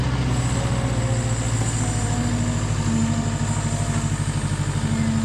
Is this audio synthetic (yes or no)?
no